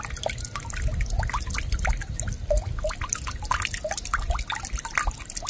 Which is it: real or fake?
real